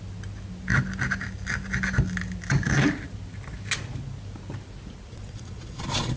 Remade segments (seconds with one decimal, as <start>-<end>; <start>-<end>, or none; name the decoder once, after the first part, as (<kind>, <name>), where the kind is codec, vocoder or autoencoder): 5.1-6.2 (vocoder, Vocos)